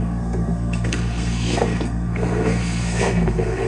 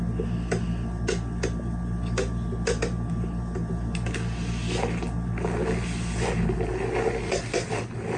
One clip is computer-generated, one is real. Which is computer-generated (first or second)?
first